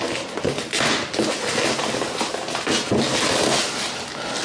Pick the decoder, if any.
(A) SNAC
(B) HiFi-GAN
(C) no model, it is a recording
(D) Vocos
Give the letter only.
C